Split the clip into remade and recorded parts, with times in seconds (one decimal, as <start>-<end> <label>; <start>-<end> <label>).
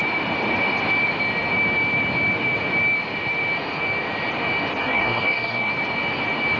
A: 0.0-4.8 recorded; 4.8-5.7 remade; 5.7-6.6 recorded